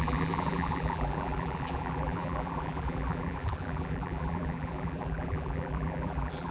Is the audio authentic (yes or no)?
no